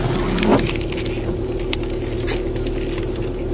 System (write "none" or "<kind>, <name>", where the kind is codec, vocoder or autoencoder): none